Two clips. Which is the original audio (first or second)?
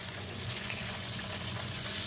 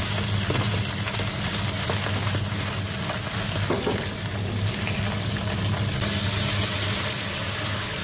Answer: second